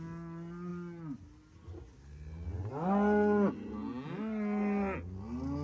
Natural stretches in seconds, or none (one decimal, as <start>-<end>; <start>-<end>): 0.0-5.6